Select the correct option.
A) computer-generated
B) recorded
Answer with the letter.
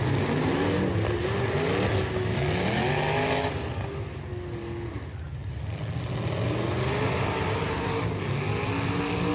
B